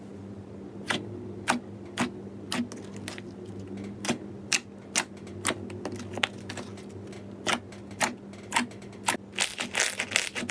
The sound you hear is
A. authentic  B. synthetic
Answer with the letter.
A